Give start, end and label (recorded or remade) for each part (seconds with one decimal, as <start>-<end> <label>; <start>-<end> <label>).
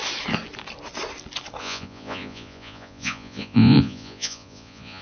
0.0-1.6 recorded; 1.6-5.0 remade